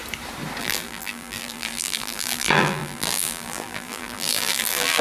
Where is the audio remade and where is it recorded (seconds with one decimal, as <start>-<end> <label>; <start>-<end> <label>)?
0.0-0.6 recorded; 0.6-5.0 remade